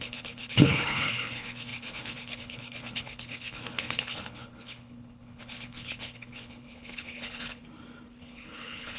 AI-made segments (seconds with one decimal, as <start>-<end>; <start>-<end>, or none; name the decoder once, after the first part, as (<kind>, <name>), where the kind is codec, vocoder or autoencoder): 0.0-7.6 (codec, HILCodec); 8.2-9.0